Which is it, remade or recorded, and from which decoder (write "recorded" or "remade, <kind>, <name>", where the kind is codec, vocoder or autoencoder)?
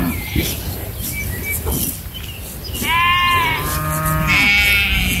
recorded